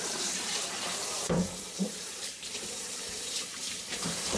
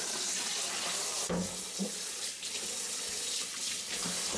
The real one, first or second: second